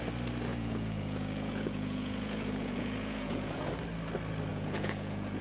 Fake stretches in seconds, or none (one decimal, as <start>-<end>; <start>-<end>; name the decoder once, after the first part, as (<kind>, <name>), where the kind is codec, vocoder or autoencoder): 0.5-3.7 (vocoder, Vocos); 4.5-5.4